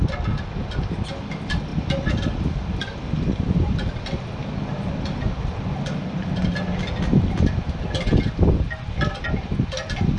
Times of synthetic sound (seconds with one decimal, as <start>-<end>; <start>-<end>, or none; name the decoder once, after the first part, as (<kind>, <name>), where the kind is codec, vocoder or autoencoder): 1.7-4.5 (vocoder, BigVGAN v2)